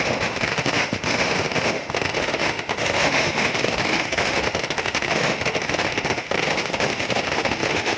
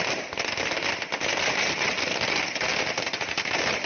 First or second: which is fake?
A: first